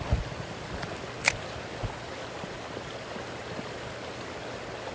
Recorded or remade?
recorded